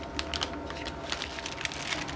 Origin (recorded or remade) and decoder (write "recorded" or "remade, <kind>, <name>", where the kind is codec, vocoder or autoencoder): recorded